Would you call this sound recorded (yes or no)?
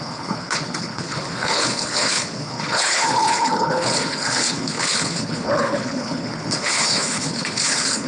no